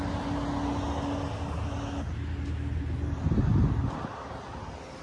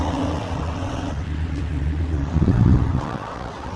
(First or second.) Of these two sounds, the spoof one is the second